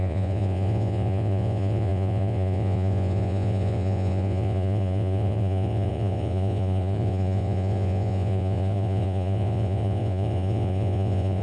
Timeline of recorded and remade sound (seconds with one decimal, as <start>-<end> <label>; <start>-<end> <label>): 0.0-11.4 remade